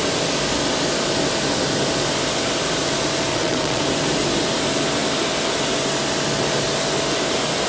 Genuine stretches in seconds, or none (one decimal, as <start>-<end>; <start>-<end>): 0.0-3.3; 3.8-7.7